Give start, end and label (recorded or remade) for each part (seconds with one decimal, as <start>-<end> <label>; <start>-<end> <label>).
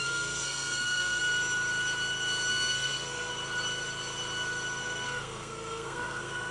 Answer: 0.0-1.2 remade; 1.2-2.5 recorded; 2.5-3.3 remade; 3.3-4.8 recorded; 4.8-6.5 remade